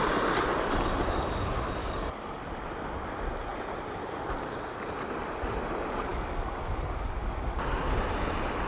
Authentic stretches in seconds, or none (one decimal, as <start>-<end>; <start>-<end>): 0.0-1.8; 2.4-6.1; 7.4-8.7